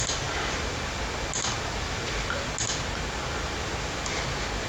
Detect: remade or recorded recorded